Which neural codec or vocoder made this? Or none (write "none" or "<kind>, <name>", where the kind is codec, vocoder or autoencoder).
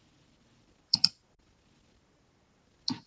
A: vocoder, BigVGAN v2